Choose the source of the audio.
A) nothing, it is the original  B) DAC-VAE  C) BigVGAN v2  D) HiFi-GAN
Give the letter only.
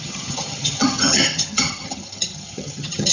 D